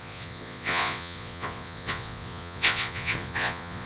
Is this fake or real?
fake